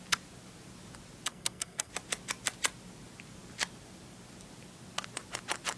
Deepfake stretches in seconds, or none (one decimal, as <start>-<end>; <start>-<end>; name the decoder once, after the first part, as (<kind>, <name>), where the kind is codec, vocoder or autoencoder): 1.3-1.9 (codec, SNAC)